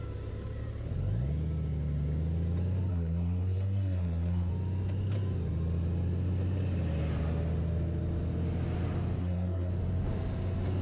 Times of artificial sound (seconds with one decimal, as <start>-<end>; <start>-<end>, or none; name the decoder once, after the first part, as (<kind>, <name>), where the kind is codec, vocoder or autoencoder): 2.9-4.5 (codec, SNAC); 9.2-9.7